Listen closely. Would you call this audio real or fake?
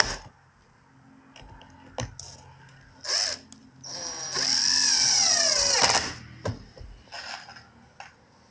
real